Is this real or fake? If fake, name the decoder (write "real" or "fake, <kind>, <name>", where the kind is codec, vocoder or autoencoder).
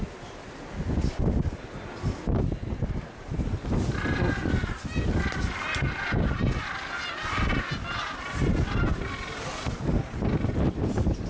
real